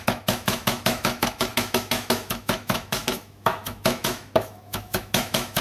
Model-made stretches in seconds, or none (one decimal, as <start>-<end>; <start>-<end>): 0.0-5.6

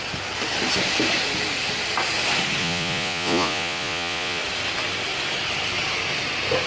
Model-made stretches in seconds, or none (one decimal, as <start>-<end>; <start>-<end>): 2.6-4.4

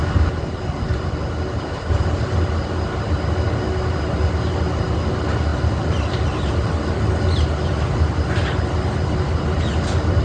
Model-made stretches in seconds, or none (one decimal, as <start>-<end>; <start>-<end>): none